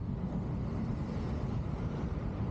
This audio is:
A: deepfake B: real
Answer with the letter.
B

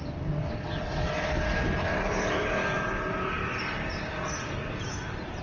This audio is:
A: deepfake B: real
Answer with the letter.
B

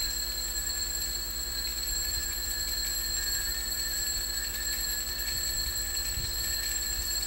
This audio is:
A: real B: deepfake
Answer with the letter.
B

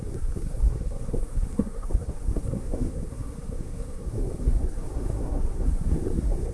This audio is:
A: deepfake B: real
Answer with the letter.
A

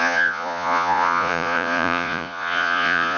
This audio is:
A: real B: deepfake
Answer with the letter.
B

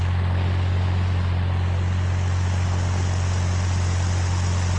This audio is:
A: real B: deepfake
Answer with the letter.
A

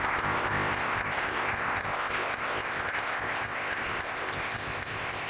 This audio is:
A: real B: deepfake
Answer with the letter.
B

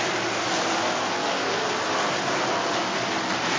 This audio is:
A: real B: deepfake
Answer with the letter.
A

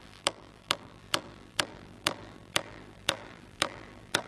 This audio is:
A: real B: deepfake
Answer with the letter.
B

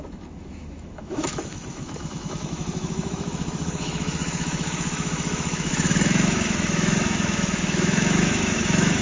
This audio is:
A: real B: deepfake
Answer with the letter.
B